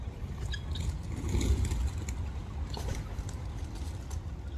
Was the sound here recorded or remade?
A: recorded